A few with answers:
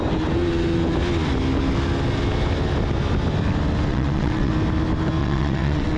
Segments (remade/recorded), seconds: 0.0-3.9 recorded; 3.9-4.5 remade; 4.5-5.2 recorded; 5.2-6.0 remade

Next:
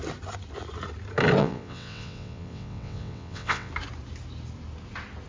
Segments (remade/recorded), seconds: 0.0-1.4 recorded; 1.4-3.7 remade; 3.7-5.3 recorded

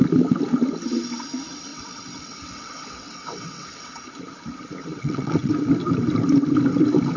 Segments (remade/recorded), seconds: 0.0-1.7 recorded; 1.7-4.0 remade; 4.0-4.8 recorded; 4.8-5.5 remade; 5.5-7.2 recorded

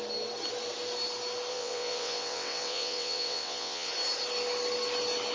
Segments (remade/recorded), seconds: 0.0-1.5 recorded; 1.5-3.9 remade; 3.9-5.3 recorded

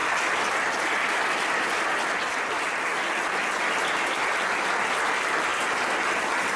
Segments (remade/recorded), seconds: 0.0-6.6 recorded